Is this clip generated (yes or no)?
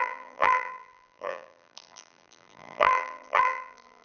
yes